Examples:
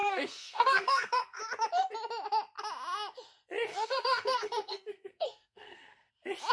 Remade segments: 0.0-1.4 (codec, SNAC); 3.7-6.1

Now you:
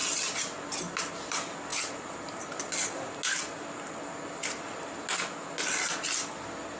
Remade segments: none

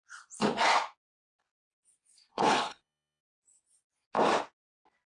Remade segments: 2.3-3.2 (codec, HILCodec)